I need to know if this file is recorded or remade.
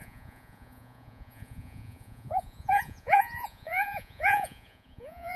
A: remade